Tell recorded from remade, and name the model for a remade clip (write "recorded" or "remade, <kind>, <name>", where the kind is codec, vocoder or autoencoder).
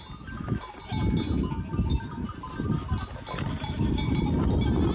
recorded